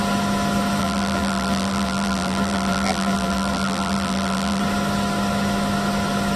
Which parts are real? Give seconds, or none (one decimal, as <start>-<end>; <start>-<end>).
0.0-0.8; 4.6-6.4